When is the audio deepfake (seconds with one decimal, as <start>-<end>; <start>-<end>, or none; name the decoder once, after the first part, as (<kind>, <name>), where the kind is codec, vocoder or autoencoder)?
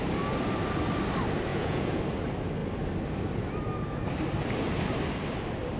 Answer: 1.5-2.0 (vocoder, Vocos)